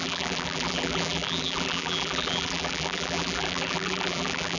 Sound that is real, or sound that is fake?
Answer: fake